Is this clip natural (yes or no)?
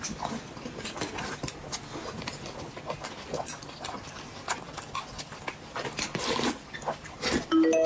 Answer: yes